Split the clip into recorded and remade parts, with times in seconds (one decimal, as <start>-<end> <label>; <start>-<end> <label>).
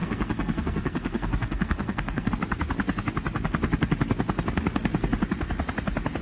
0.0-2.3 remade; 2.3-6.2 recorded